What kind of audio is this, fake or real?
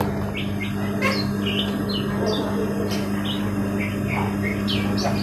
real